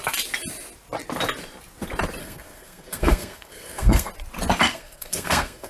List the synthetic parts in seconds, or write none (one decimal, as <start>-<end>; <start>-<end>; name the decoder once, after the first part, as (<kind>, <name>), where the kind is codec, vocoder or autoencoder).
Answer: 2.2-4.1 (codec, SNAC); 4.7-5.7

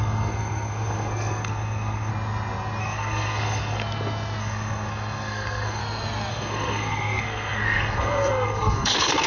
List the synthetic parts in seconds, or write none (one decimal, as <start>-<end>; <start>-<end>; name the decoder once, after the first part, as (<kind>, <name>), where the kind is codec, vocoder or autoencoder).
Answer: 0.0-2.1 (codec, SNAC); 2.8-3.8; 4.4-5.8; 6.3-9.3

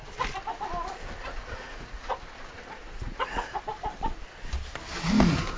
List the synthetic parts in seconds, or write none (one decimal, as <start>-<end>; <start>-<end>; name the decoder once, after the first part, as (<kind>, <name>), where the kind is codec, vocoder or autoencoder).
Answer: 1.2-2.1 (vocoder, Vocos); 2.8-3.6

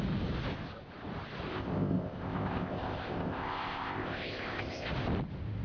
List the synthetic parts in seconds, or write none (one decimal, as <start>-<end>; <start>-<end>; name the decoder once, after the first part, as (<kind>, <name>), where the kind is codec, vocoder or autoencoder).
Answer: 1.5-4.9 (codec, ZipCodec)

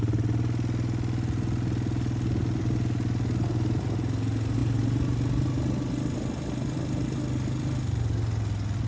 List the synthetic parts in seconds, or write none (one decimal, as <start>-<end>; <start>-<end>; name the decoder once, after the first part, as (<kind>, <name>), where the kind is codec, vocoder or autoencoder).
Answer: none

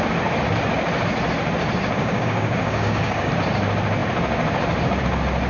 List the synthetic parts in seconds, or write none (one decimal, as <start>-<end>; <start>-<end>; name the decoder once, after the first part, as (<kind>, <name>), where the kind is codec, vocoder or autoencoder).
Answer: 2.0-3.3 (codec, DAC)

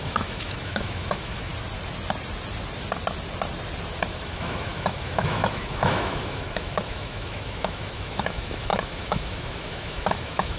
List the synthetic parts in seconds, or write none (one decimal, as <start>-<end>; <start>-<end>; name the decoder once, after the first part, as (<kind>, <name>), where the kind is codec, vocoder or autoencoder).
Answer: 0.0-1.5 (autoencoder, DAC-VAE); 4.1-10.6